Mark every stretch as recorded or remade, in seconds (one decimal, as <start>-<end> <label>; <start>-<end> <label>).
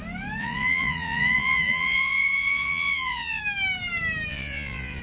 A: 0.0-0.4 recorded; 0.4-3.4 remade; 3.4-4.3 recorded; 4.3-5.0 remade